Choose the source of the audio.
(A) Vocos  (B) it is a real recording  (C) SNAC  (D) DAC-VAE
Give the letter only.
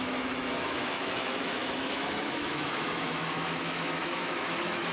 D